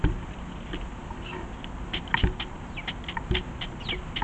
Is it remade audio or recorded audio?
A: recorded